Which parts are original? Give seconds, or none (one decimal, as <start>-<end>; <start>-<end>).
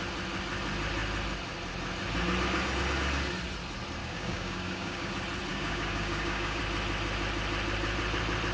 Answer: 0.0-4.0; 5.1-5.5; 6.6-8.5